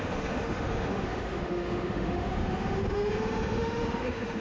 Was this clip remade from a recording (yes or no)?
yes